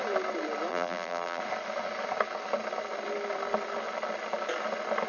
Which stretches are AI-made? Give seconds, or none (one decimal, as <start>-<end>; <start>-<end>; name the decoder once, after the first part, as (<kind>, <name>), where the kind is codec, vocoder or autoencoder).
0.7-1.4 (vocoder, BigVGAN v2)